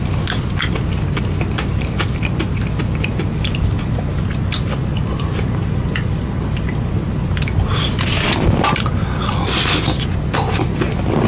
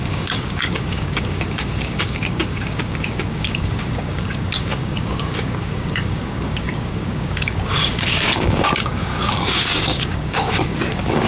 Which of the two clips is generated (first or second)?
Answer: second